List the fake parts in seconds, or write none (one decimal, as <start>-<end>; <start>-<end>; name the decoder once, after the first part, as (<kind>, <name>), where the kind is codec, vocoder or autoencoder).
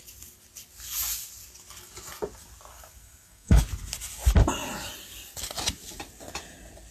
2.7-3.6 (codec, SNAC)